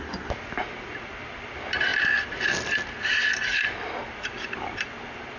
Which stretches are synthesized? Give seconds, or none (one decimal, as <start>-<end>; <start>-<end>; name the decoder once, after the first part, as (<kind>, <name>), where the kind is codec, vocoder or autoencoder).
none